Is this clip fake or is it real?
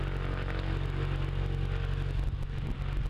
real